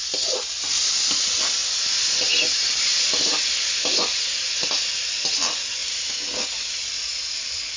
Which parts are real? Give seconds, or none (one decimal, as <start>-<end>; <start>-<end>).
0.0-7.8